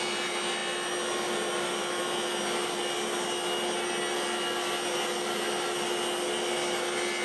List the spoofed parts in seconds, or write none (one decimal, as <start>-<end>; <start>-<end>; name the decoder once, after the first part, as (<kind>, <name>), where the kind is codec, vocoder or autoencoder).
none